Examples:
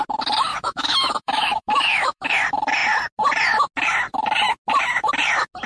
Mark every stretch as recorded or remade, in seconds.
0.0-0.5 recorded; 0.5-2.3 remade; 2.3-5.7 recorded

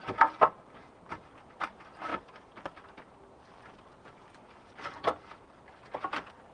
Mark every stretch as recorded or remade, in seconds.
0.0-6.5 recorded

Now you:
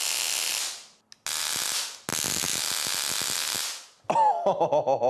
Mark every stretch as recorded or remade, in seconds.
0.0-5.1 recorded

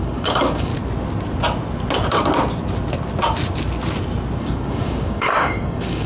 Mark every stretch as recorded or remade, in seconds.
0.0-0.7 remade; 0.7-4.4 recorded; 4.4-6.1 remade

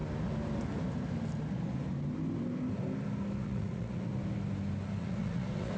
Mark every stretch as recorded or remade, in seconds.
0.0-3.4 recorded; 3.4-4.1 remade; 4.1-5.0 recorded; 5.0-5.8 remade

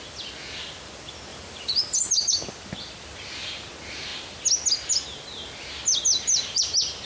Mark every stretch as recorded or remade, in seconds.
0.0-1.3 recorded; 1.3-2.1 remade; 2.1-7.1 recorded